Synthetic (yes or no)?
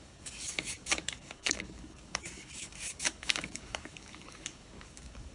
yes